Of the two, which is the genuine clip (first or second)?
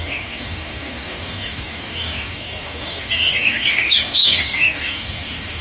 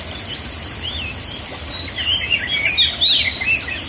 second